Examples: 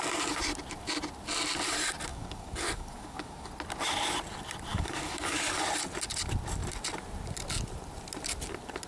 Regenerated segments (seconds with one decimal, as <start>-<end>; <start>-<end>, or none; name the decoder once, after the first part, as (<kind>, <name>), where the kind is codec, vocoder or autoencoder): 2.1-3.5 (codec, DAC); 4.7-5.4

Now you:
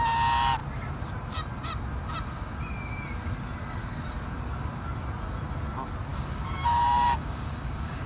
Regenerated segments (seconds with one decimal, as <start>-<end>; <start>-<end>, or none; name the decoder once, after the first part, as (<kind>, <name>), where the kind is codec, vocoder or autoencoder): 6.1-8.1 (codec, DAC)

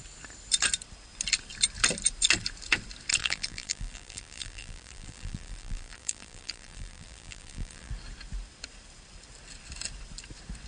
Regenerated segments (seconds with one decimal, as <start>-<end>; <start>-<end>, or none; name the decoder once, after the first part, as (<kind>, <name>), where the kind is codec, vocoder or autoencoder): 3.2-7.9 (vocoder, BigVGAN v2)

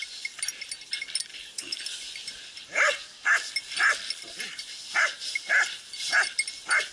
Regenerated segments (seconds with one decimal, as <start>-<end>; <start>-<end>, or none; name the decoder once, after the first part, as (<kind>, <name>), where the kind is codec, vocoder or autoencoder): 1.3-1.8 (codec, DAC)

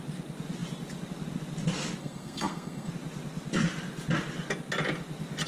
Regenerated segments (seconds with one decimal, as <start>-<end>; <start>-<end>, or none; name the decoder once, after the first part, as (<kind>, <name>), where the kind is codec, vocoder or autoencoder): 2.0-2.9 (codec, SNAC)